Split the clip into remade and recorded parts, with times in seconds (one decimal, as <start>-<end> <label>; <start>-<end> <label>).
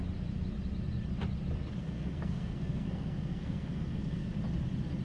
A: 0.0-1.8 recorded; 1.8-4.3 remade; 4.3-5.0 recorded